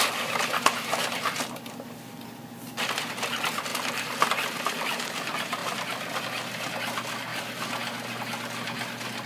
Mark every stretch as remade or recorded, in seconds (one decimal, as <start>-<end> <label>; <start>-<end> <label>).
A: 0.0-3.7 recorded; 3.7-4.3 remade; 4.3-9.3 recorded